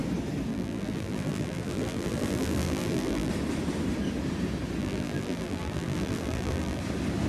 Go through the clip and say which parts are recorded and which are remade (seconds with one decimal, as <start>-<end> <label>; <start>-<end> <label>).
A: 0.0-0.5 recorded; 0.5-3.3 remade; 3.3-4.8 recorded; 4.8-6.8 remade; 6.8-7.3 recorded